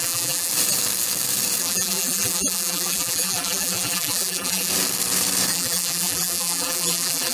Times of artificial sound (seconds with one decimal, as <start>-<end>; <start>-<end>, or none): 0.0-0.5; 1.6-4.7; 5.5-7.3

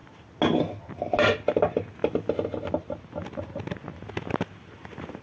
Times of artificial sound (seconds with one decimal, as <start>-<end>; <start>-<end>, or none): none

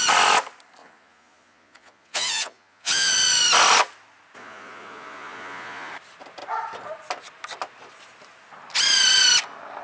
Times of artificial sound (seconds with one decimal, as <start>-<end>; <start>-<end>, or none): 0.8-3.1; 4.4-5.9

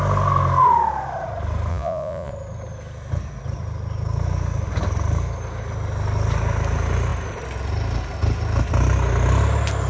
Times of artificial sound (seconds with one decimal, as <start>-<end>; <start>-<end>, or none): 1.7-2.3